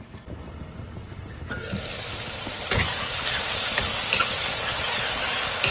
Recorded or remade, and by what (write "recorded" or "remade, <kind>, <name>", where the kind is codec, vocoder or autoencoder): recorded